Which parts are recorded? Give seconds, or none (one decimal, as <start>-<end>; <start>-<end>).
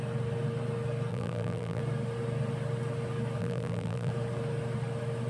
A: 0.0-1.1; 1.8-3.4; 4.1-5.3